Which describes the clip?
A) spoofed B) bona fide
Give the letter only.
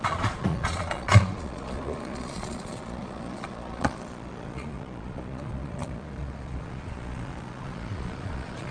A